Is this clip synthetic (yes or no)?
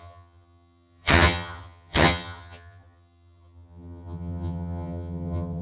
yes